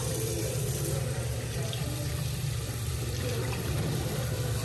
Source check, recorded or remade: remade